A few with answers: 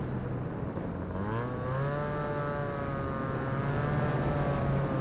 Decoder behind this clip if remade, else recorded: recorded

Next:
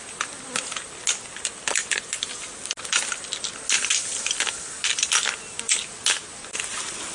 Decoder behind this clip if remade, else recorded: recorded